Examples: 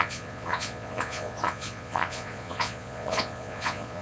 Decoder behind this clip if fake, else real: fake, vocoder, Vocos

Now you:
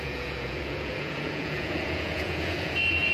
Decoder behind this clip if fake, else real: fake, vocoder, Vocos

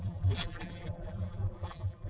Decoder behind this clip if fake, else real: fake, vocoder, BigVGAN v2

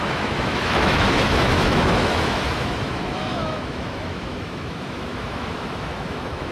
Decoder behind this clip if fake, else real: fake, autoencoder, DAC-VAE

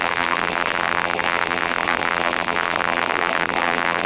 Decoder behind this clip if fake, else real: fake, vocoder, BigVGAN v2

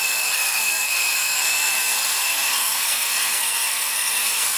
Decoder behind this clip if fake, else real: fake, codec, SNAC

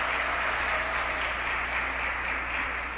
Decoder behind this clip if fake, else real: real